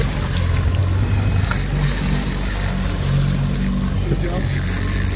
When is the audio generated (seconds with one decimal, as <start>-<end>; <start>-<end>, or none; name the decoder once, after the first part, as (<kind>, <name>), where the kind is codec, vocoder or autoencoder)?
none